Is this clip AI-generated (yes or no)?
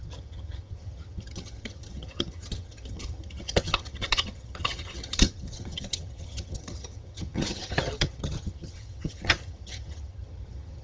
yes